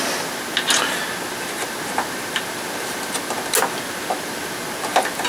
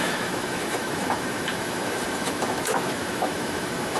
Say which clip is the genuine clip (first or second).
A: first